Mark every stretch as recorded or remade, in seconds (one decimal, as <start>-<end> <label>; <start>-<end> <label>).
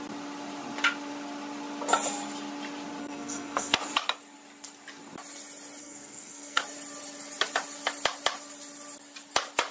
0.0-3.0 recorded; 3.0-3.8 remade; 3.8-5.8 recorded; 5.8-6.6 remade; 6.6-9.7 recorded